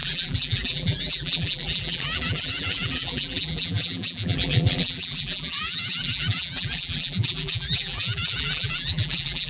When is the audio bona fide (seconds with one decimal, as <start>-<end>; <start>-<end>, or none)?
none